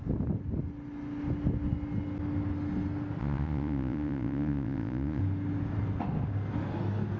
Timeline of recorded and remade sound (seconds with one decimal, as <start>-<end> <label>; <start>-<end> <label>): 0.0-3.2 recorded; 3.2-5.2 remade; 5.2-7.2 recorded